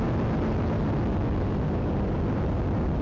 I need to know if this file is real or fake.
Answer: real